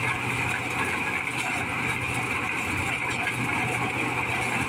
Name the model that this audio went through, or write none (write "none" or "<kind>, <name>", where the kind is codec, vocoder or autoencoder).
none